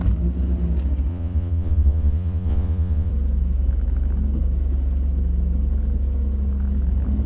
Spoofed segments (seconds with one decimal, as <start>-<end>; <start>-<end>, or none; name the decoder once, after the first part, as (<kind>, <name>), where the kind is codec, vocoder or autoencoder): 1.1-3.1 (vocoder, Vocos)